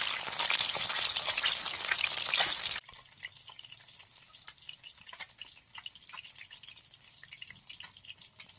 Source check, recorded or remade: recorded